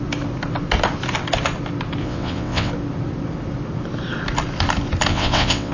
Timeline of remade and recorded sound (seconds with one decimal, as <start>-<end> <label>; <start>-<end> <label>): 0.0-2.0 recorded; 2.0-2.7 remade; 2.7-5.1 recorded; 5.1-5.7 remade